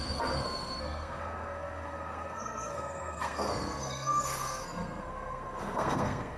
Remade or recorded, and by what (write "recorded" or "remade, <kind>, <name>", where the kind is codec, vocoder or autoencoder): remade, codec, SNAC